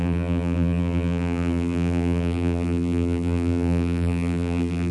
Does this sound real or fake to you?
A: fake